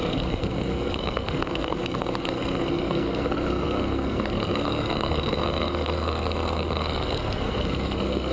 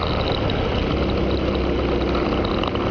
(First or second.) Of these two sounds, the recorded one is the second